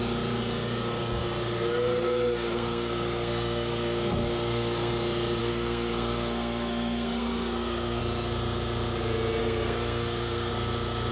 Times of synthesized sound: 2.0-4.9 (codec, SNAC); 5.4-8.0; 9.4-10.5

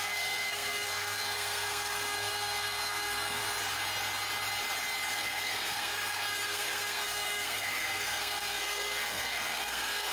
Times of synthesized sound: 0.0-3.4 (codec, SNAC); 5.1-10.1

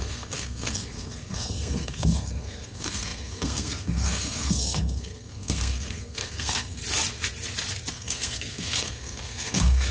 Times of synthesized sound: 0.0-6.8 (codec, SNAC); 7.9-9.9